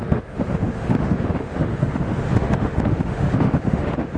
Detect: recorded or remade remade